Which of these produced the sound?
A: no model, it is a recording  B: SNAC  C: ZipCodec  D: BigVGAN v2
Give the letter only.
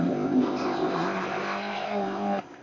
C